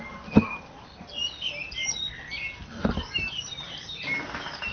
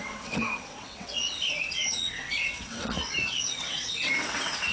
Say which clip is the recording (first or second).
first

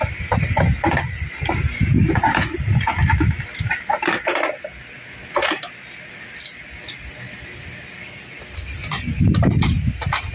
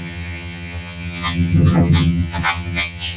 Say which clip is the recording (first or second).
first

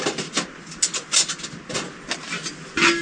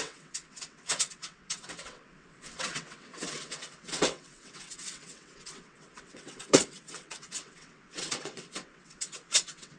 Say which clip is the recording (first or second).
first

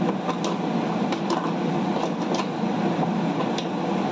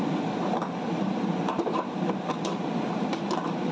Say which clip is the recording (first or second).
first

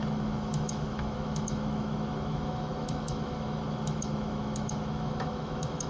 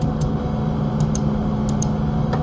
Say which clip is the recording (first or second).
second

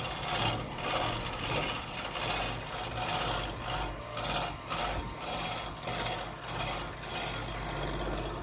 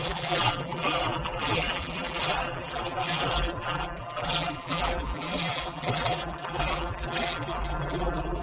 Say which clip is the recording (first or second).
first